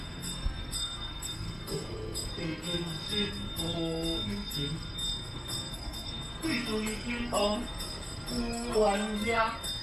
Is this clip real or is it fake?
fake